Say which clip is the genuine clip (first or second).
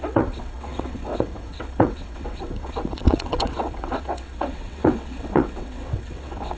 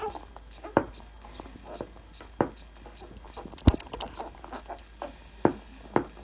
second